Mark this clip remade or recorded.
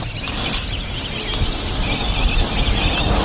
recorded